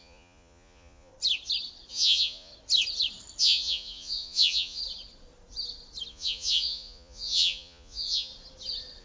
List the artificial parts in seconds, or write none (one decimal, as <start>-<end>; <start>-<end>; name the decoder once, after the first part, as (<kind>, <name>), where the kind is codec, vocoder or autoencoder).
0.0-1.1 (vocoder, Vocos); 1.9-2.5; 3.4-4.8; 6.1-8.3